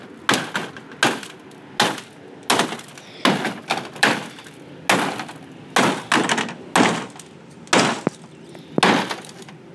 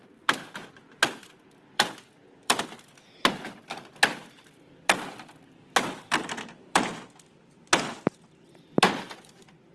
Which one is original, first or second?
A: first